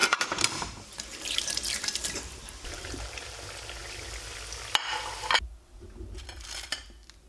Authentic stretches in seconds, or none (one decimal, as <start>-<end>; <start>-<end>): 3.4-7.3